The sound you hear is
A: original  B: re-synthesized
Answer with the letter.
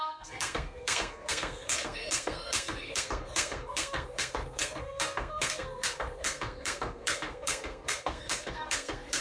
B